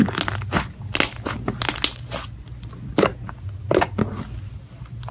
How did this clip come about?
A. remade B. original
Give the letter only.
B